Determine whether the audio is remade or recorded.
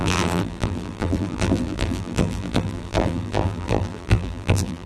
remade